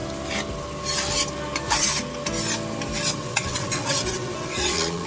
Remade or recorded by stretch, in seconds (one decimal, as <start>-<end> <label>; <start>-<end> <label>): 0.0-3.1 recorded; 3.1-5.1 remade